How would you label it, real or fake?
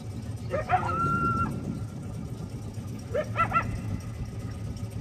real